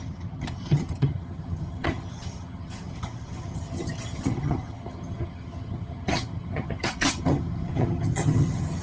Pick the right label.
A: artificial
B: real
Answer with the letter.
A